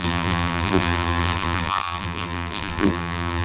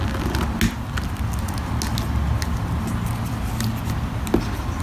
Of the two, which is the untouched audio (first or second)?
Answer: second